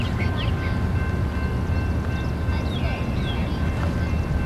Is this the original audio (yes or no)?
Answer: yes